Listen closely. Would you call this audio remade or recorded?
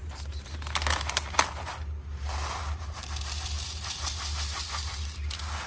recorded